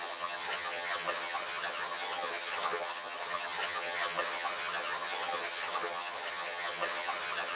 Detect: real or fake fake